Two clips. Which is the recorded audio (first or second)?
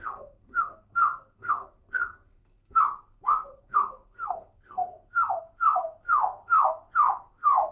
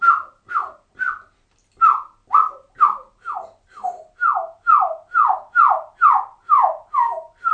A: second